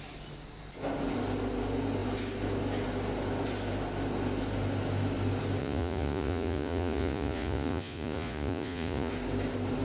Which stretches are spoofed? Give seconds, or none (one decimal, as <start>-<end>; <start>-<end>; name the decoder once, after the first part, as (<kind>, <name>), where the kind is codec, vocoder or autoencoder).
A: 5.6-9.1 (vocoder, Vocos)

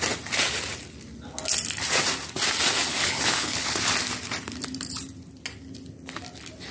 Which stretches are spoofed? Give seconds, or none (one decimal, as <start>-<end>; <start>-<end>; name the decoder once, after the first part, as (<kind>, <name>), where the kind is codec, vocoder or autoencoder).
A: 2.9-3.8 (codec, HILCodec)